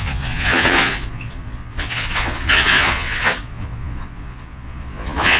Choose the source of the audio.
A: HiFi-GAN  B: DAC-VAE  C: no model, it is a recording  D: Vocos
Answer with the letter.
D